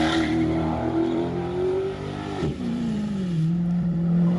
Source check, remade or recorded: remade